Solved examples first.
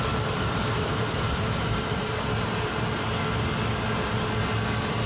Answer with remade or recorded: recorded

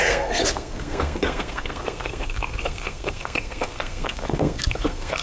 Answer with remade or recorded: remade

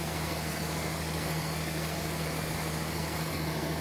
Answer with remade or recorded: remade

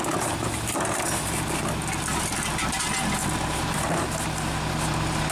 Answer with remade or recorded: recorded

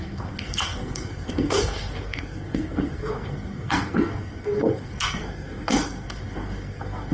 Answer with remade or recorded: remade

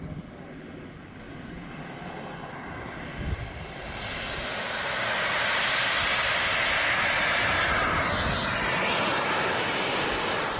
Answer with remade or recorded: recorded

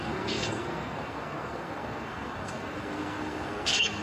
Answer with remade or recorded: remade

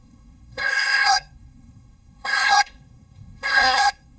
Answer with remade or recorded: remade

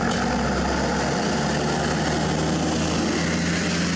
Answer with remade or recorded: recorded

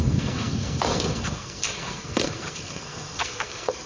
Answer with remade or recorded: remade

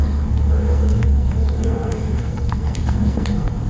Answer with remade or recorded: remade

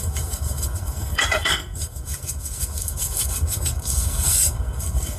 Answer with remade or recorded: remade